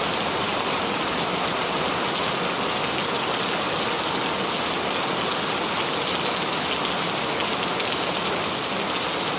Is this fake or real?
real